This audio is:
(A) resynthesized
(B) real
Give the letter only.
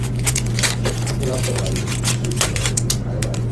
A